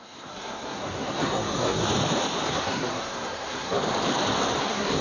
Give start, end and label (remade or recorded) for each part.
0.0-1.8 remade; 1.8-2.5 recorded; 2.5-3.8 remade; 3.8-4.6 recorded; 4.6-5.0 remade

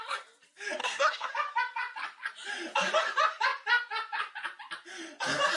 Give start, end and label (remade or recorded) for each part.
0.0-0.8 recorded; 0.8-1.3 remade; 1.3-5.6 recorded

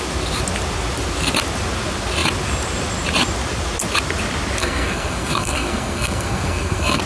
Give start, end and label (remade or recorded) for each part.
0.0-4.6 recorded; 4.6-7.0 remade

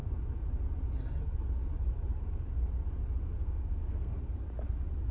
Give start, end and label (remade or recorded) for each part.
0.0-3.4 recorded; 3.4-4.2 remade; 4.2-5.1 recorded

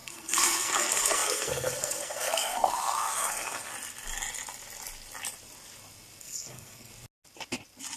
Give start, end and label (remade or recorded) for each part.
0.0-3.7 remade; 3.7-6.2 recorded; 6.2-6.9 remade; 6.9-8.0 recorded

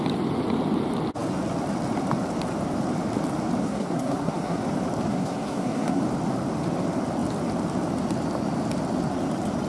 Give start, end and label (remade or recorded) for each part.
0.0-3.6 recorded; 3.6-4.6 remade; 4.6-5.1 recorded; 5.1-6.0 remade; 6.0-9.7 recorded

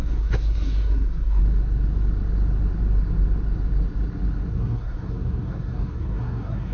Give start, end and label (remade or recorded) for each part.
0.0-1.4 remade; 1.4-4.5 recorded; 4.5-6.7 remade

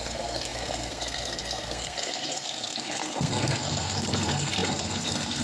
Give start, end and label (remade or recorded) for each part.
0.0-5.4 remade